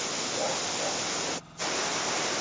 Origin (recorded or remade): recorded